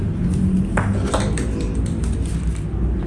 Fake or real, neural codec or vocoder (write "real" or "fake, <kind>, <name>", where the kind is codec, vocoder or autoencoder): real